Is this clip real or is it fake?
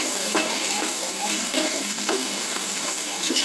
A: fake